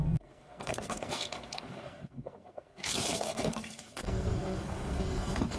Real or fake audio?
fake